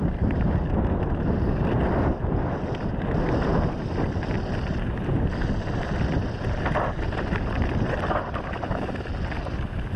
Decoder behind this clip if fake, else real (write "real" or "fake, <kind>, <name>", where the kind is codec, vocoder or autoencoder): real